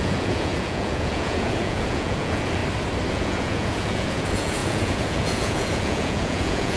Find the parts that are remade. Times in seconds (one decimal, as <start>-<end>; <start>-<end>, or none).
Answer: 0.0-2.6; 3.1-6.8